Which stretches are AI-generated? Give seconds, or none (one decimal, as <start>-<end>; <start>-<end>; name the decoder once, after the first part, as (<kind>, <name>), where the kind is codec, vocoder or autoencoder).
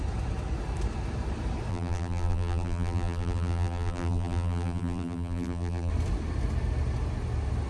1.7-5.9 (vocoder, BigVGAN v2)